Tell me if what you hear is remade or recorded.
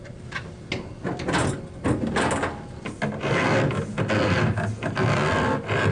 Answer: recorded